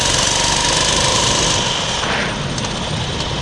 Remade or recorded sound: recorded